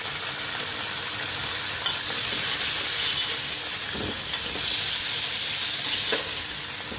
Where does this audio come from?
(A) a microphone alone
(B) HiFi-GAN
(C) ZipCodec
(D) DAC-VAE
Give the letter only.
A